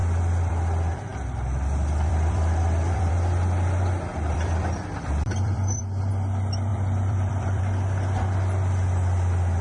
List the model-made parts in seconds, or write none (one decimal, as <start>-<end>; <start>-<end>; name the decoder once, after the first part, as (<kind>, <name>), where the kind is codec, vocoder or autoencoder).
1.1-3.1 (vocoder, BigVGAN v2); 4.1-6.1; 6.7-7.6